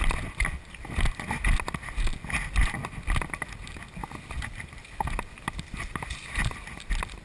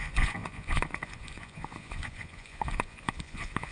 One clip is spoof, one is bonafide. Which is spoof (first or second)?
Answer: second